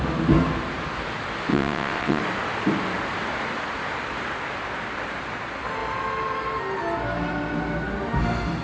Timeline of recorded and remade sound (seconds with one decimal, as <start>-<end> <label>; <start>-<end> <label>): 0.0-1.5 recorded; 1.5-2.2 remade; 2.2-8.6 recorded